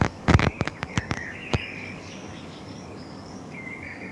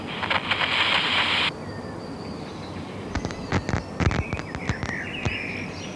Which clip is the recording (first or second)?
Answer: second